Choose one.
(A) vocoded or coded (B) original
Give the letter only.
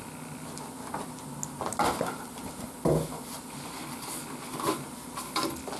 B